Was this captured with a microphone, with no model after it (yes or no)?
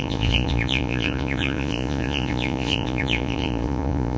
no